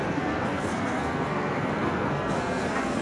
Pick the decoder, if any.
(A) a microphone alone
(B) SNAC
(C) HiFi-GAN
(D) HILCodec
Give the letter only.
B